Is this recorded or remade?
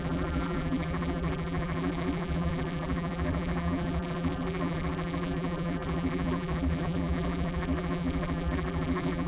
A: remade